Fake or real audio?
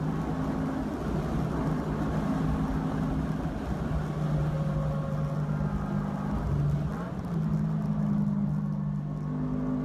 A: real